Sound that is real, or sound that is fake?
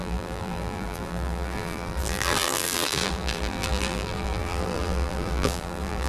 fake